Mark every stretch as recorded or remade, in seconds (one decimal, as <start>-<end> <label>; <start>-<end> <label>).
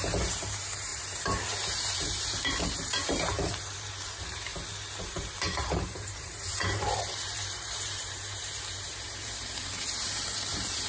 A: 0.0-4.5 remade; 4.5-5.0 recorded; 5.0-10.9 remade